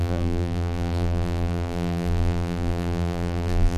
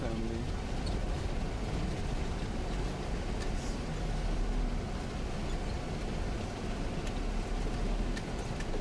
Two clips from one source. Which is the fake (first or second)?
first